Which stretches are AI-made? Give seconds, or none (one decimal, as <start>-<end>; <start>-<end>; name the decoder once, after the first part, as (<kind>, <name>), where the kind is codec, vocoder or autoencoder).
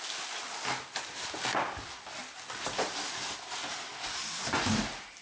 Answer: none